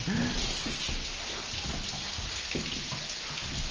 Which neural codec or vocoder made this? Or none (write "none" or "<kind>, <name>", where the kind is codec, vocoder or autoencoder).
none